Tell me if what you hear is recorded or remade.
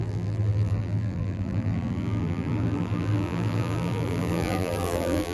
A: remade